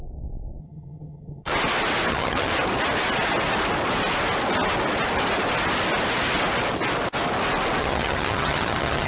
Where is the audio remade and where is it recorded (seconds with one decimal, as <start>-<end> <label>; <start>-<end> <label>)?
0.0-0.6 recorded; 0.6-1.5 remade; 1.5-2.1 recorded; 2.1-2.5 remade; 2.5-7.8 recorded; 7.8-9.1 remade